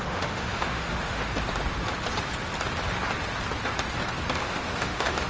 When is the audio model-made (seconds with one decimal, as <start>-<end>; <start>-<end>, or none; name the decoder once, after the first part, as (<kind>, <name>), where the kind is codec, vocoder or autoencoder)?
0.0-1.2 (autoencoder, DAC-VAE); 4.4-5.3